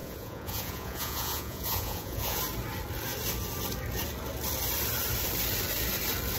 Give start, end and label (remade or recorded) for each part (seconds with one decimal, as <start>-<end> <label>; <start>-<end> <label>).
0.0-2.4 remade; 2.4-6.4 recorded